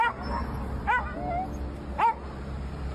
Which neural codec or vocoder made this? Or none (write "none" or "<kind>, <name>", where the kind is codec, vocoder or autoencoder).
none